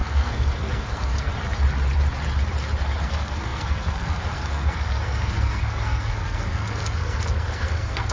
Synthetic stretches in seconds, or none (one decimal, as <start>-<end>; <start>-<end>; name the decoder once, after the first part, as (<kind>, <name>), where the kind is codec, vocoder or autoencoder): 0.0-1.3 (codec, SNAC); 3.0-8.1